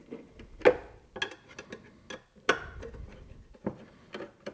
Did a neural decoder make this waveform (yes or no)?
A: no